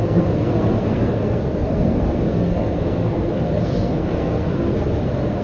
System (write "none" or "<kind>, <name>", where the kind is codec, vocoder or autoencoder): codec, SNAC